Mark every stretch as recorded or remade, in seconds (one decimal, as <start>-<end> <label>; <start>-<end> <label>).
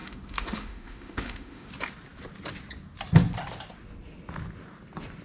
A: 0.0-1.7 remade; 1.7-5.2 recorded